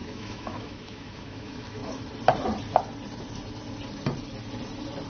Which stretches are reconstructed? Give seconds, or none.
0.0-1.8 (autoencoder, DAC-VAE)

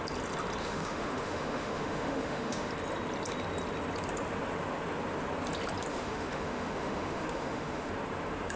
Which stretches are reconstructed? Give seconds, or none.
0.6-2.7 (autoencoder, DAC-VAE); 5.9-7.9